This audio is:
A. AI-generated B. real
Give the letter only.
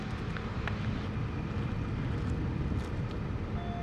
B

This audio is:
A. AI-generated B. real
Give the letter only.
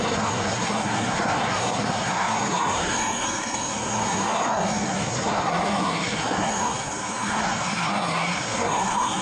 A